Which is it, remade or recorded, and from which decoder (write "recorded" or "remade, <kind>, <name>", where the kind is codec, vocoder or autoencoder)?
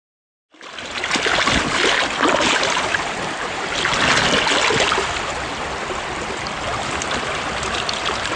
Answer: recorded